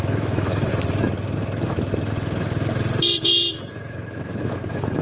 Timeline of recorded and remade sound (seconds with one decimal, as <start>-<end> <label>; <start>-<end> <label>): 0.0-0.7 remade; 0.7-3.7 recorded; 3.7-5.0 remade